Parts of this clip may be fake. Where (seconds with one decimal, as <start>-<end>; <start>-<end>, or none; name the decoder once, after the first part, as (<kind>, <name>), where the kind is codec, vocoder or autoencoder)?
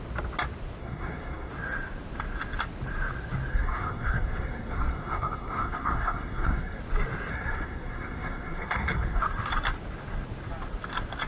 0.8-1.5 (codec, SNAC); 3.5-6.8; 7.3-9.2